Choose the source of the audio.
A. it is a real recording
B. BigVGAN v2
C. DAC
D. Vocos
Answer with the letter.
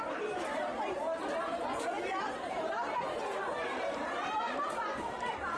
B